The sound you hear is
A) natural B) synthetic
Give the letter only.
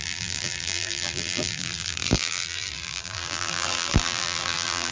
B